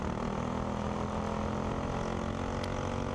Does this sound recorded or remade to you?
recorded